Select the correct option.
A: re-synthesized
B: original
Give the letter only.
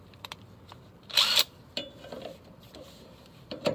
A